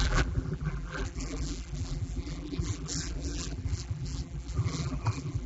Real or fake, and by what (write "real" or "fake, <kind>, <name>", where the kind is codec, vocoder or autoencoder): fake, vocoder, BigVGAN v2